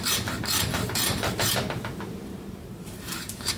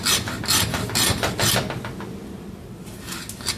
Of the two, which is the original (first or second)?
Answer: second